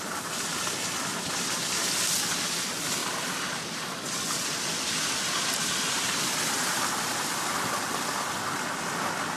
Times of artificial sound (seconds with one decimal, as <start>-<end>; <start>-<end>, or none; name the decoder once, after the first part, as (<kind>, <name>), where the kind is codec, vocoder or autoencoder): 1.1-2.2 (vocoder, BigVGAN v2); 3.0-3.6; 5.6-7.1